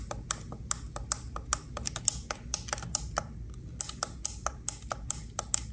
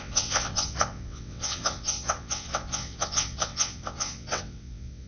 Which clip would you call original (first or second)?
first